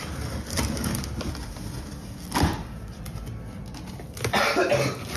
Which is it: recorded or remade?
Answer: recorded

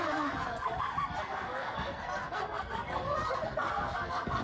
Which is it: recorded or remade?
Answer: remade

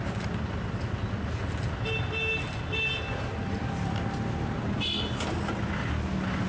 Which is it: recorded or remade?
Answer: recorded